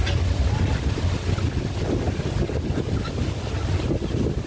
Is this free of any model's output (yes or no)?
yes